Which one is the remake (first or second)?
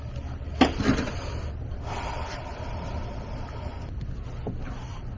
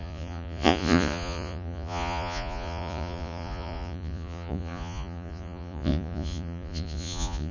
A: second